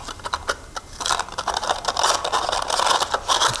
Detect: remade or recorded recorded